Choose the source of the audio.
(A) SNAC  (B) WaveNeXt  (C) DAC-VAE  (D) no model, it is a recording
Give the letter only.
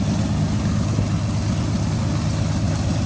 D